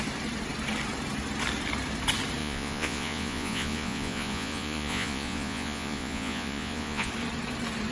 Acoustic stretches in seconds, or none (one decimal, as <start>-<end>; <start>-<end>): 0.0-2.4; 7.1-7.9